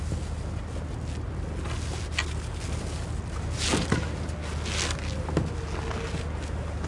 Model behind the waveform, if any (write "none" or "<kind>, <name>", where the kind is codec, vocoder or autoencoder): none